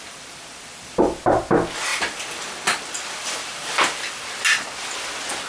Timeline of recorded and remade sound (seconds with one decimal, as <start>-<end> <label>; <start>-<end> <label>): 0.0-1.2 remade; 1.2-1.9 recorded; 1.9-4.4 remade; 4.4-5.5 recorded